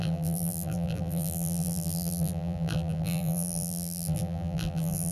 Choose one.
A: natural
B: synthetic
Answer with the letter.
B